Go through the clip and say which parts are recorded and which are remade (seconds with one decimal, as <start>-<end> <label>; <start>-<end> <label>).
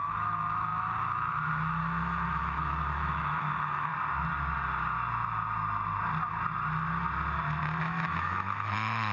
0.0-3.9 remade; 3.9-7.8 recorded; 7.8-9.1 remade